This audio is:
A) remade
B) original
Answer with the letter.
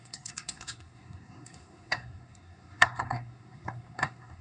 A